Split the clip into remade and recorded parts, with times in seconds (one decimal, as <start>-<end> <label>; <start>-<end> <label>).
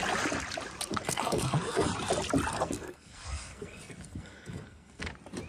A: 0.0-0.9 recorded; 0.9-1.9 remade; 1.9-2.5 recorded; 2.5-5.1 remade; 5.1-5.5 recorded